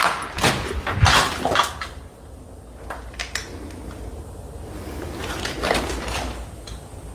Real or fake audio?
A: real